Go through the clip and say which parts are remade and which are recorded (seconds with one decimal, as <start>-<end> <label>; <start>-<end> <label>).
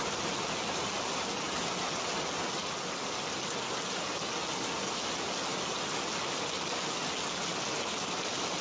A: 0.0-8.6 recorded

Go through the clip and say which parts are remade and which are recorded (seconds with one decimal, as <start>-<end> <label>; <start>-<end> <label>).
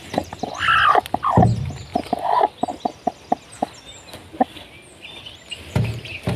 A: 0.0-6.4 recorded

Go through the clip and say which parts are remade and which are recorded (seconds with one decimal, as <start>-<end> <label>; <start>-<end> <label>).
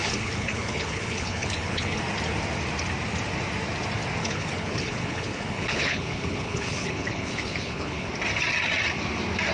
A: 0.0-2.0 remade; 2.0-4.2 recorded; 4.2-8.1 remade; 8.1-9.5 recorded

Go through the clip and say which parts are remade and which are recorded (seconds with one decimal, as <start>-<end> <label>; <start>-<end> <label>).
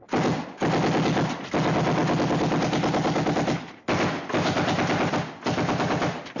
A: 0.0-6.4 recorded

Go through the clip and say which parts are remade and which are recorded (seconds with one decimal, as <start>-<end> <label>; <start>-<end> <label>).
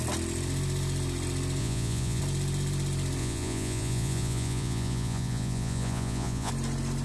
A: 0.0-1.6 recorded; 1.6-2.2 remade; 2.2-3.2 recorded; 3.2-6.5 remade; 6.5-7.0 recorded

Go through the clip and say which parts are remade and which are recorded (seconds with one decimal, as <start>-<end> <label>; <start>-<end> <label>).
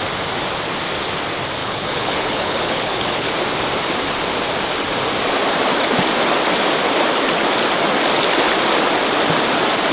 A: 0.0-1.6 recorded; 1.6-3.3 remade; 3.3-9.9 recorded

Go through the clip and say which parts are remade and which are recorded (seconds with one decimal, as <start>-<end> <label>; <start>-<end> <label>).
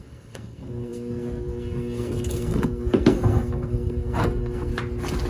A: 0.0-4.7 remade; 4.7-5.3 recorded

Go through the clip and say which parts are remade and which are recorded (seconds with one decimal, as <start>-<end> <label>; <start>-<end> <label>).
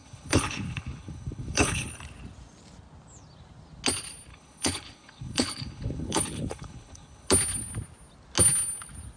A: 0.0-1.9 remade; 1.9-4.3 recorded; 4.3-7.3 remade; 7.3-9.2 recorded